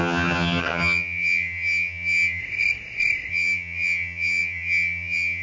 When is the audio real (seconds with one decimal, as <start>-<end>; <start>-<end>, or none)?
2.4-3.3